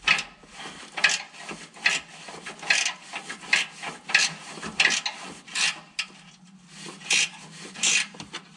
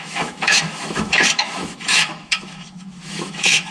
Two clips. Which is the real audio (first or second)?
first